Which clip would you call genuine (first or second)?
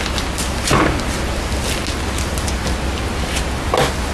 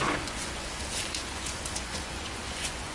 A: first